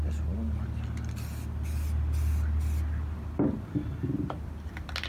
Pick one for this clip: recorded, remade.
recorded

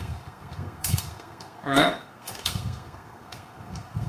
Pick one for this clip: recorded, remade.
remade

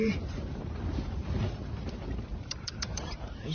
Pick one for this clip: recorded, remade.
remade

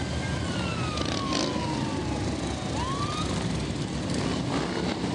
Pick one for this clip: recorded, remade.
recorded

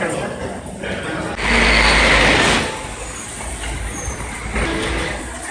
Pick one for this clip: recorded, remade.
recorded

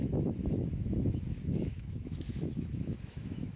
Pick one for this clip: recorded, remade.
remade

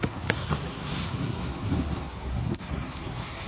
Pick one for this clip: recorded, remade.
remade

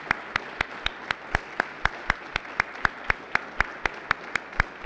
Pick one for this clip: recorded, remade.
recorded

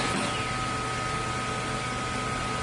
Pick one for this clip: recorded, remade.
recorded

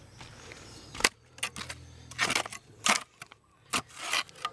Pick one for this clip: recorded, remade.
recorded